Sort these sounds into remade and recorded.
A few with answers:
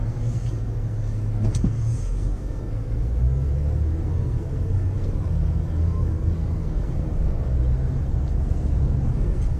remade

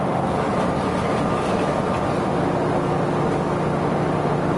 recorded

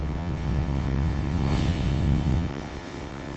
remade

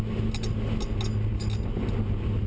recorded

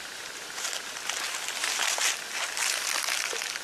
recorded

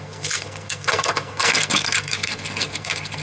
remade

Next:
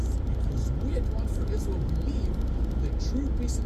recorded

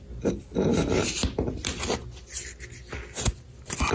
recorded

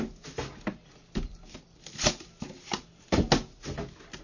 recorded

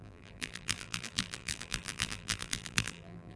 remade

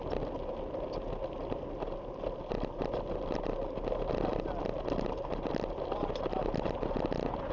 recorded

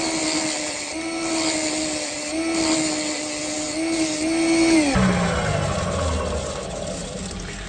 recorded